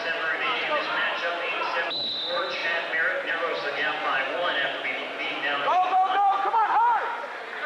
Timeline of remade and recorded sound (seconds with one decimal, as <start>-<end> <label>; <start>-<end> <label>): 0.0-7.7 recorded